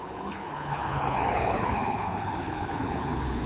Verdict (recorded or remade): remade